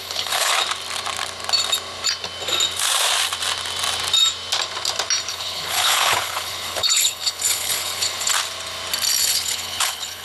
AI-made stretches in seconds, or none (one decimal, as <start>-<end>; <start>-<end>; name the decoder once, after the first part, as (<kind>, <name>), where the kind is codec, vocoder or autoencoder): 0.0-0.5 (codec, HILCodec); 5.3-8.3; 9.2-10.2